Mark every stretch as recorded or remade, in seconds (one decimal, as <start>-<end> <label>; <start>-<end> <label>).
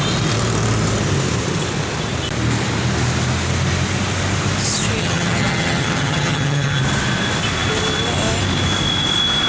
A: 0.0-5.0 recorded; 5.0-6.8 remade; 6.8-9.5 recorded